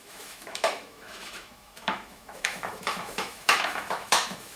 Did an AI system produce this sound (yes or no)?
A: yes